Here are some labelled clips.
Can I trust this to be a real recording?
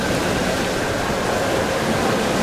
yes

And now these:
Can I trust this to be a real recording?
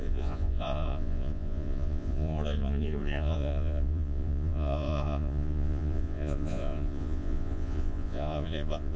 no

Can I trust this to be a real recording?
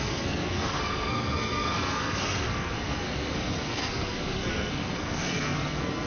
no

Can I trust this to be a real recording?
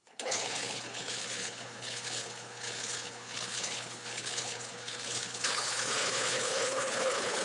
no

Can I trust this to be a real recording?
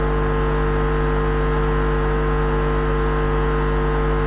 yes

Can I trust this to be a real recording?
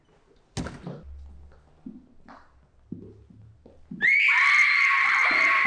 yes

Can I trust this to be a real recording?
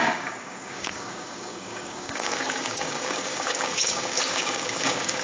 no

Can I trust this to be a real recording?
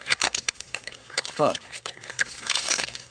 no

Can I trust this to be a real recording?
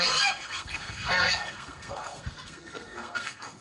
no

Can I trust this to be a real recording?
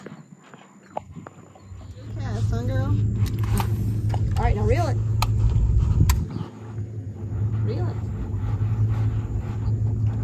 yes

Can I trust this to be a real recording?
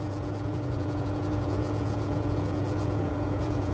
no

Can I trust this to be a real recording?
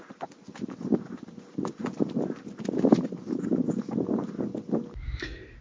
yes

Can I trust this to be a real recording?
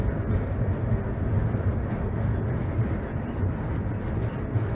yes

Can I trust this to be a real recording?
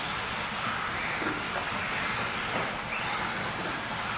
yes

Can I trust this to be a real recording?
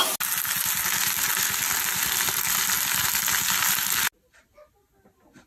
yes